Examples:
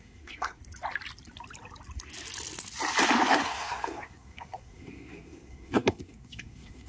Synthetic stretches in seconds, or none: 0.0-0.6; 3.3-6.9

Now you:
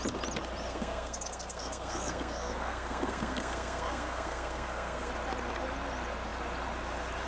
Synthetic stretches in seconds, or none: 0.7-5.1

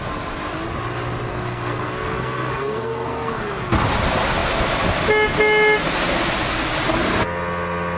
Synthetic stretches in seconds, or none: 1.3-3.7

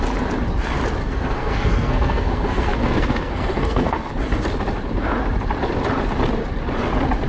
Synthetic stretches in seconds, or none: 1.0-4.1

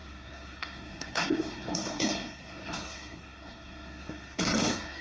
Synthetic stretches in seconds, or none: 0.0-5.0

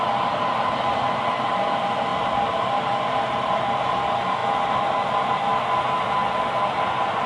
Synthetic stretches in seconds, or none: none

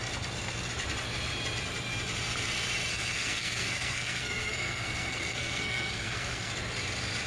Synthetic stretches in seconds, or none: 2.9-6.5